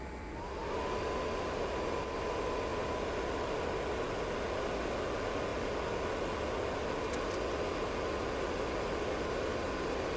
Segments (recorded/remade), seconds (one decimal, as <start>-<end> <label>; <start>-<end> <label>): 0.0-10.2 recorded